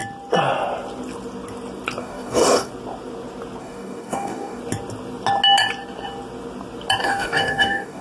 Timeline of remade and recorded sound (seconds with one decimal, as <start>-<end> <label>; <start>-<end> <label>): 0.0-2.0 recorded; 2.0-2.7 remade; 2.7-3.6 recorded; 3.6-4.6 remade; 4.6-7.0 recorded; 7.0-8.0 remade